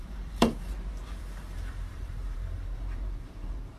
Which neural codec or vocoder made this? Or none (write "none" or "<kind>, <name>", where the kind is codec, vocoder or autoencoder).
vocoder, BigVGAN v2